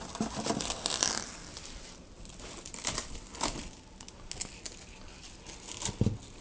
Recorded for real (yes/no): yes